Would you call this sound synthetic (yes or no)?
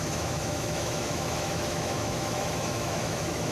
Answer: yes